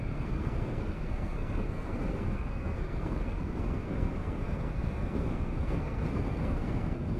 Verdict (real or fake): fake